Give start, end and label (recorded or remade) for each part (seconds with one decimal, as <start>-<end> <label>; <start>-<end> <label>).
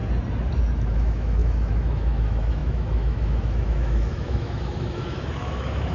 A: 0.0-0.6 recorded; 0.6-5.9 remade